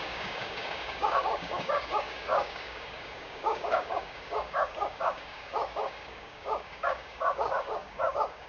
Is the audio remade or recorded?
remade